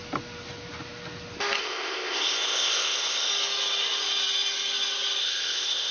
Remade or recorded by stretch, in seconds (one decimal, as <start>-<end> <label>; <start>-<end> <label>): 0.0-1.6 recorded; 1.6-3.3 remade; 3.3-5.2 recorded; 5.2-5.9 remade